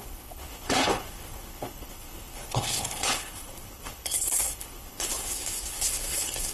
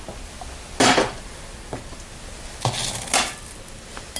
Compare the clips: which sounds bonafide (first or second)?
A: second